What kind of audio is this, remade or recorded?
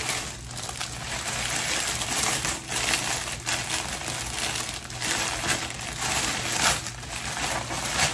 recorded